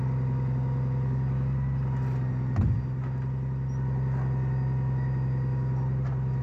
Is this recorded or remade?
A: recorded